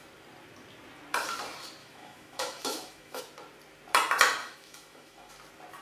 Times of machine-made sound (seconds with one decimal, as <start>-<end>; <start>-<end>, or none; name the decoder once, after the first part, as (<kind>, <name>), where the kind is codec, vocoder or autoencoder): 1.8-3.2 (autoencoder, DAC-VAE); 4.4-5.3